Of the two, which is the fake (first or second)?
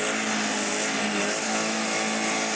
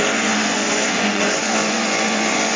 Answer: second